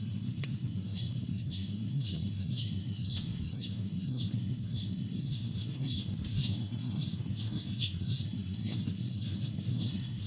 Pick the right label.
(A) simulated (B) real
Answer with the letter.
A